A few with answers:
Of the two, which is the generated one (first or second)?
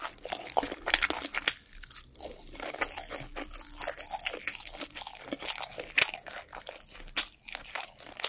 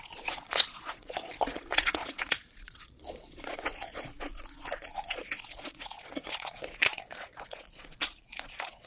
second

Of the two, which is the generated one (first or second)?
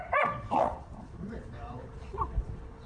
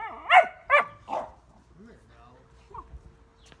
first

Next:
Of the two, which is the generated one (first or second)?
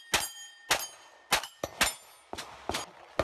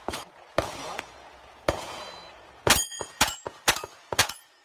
second